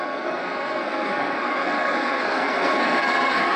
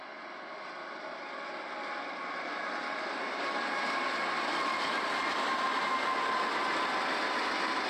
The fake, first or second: first